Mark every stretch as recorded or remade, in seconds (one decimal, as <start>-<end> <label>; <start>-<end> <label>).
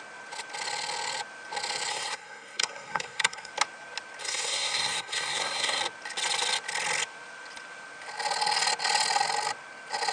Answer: 0.0-1.9 recorded; 1.9-3.5 remade; 3.5-4.2 recorded; 4.2-5.8 remade; 5.8-10.1 recorded